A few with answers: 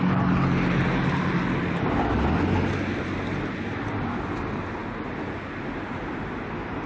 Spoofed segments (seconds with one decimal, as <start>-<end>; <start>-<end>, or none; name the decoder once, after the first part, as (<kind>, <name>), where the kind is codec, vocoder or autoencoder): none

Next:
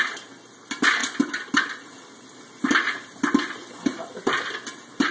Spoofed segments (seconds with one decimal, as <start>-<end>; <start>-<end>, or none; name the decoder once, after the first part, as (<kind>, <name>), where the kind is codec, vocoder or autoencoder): none

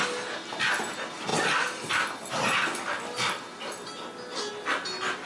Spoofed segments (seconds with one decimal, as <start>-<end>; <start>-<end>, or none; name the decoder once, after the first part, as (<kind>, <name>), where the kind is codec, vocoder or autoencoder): none

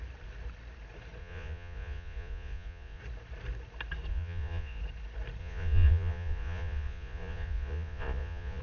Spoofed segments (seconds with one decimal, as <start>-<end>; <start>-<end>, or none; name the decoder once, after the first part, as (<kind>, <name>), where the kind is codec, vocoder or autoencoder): 1.2-3.0 (vocoder, Vocos); 4.1-4.8; 5.4-8.6

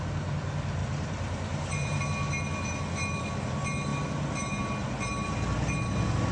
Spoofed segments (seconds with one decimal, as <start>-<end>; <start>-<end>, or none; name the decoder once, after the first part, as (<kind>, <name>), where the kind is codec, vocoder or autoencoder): 0.8-2.0 (vocoder, BigVGAN v2)

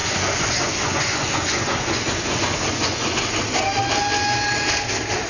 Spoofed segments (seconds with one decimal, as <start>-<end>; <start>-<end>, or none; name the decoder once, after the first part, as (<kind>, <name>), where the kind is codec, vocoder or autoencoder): 0.0-3.2 (vocoder, Vocos)

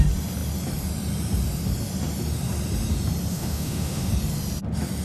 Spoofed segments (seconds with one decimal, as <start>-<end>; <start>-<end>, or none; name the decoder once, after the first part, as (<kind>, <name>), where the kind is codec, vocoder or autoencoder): 3.3-4.1 (autoencoder, DAC-VAE)